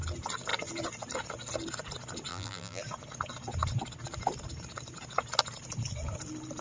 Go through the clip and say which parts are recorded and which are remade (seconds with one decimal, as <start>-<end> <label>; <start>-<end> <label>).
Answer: 0.0-2.3 recorded; 2.3-2.8 remade; 2.8-6.6 recorded